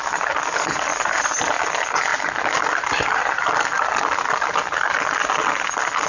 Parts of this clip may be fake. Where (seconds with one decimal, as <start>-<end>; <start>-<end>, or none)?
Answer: 0.9-1.6